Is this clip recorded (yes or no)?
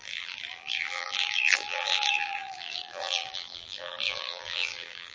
no